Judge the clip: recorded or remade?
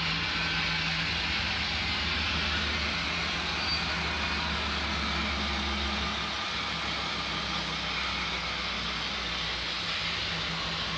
recorded